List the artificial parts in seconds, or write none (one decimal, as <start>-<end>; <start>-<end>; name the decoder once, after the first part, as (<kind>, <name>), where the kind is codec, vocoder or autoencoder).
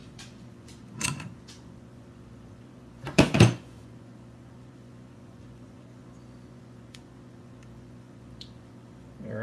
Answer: 0.0-9.4 (vocoder, Vocos)